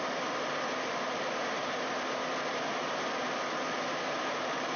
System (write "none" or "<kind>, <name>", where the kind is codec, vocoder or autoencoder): none